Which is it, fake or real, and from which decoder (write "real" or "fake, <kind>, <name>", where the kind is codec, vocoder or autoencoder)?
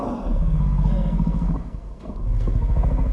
fake, codec, SNAC